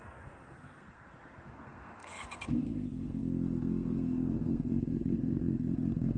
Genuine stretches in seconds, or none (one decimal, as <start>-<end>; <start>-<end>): none